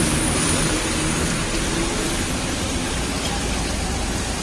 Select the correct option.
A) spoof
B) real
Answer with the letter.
A